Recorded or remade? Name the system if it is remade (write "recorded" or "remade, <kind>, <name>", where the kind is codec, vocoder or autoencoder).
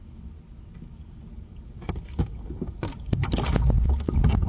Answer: recorded